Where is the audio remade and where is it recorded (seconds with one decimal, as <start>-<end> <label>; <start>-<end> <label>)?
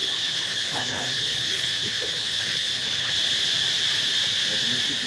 0.0-3.1 remade; 3.1-5.1 recorded